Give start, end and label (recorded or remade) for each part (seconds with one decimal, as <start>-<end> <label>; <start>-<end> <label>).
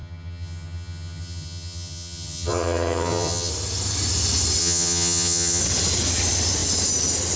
0.0-3.5 remade; 3.5-4.6 recorded; 4.6-5.6 remade; 5.6-7.4 recorded